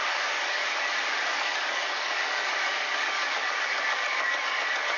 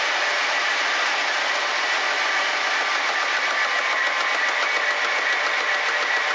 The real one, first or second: second